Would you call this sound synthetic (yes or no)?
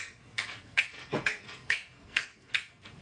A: yes